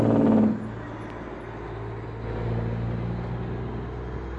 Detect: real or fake real